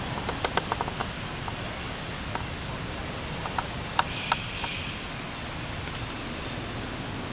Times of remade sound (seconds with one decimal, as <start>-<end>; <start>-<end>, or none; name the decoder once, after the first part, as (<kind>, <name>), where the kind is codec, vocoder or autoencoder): none